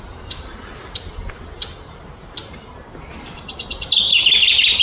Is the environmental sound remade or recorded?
recorded